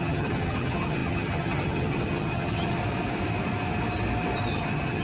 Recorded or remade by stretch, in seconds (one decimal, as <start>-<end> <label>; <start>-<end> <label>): 0.0-2.8 remade; 2.8-4.5 recorded; 4.5-5.0 remade

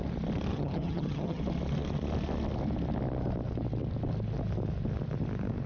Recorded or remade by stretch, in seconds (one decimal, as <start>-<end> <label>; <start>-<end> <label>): 0.0-0.5 recorded; 0.5-1.4 remade; 1.4-5.7 recorded

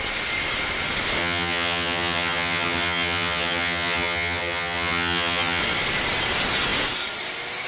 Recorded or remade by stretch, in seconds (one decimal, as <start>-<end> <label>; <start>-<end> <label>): 0.0-1.2 recorded; 1.2-5.6 remade; 5.6-7.7 recorded

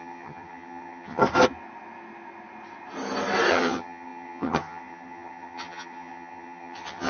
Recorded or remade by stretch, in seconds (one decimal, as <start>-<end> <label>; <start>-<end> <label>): 0.0-1.2 remade; 1.2-3.5 recorded; 3.5-7.1 remade

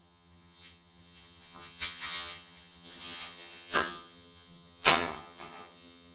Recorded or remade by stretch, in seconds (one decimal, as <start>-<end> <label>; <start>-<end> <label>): 0.0-6.1 remade

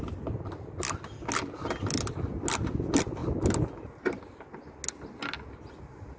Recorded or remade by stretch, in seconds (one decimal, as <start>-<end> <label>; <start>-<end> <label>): 0.0-6.2 recorded

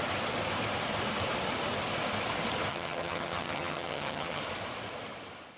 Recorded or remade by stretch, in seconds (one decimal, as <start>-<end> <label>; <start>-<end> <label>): 0.0-2.7 recorded; 2.7-4.4 remade; 4.4-5.6 recorded